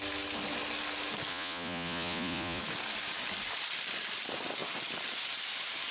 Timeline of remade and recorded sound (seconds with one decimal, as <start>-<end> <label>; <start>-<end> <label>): 0.0-1.3 recorded; 1.3-2.6 remade; 2.6-5.9 recorded